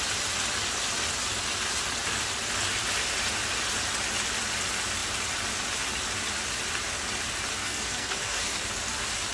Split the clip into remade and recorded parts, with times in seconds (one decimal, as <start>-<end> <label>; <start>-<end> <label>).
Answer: 0.0-7.5 recorded; 7.5-8.7 remade; 8.7-9.3 recorded